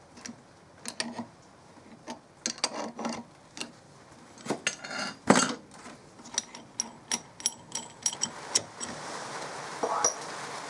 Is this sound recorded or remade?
recorded